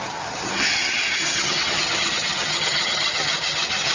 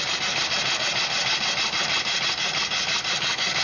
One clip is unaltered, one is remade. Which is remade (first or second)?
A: first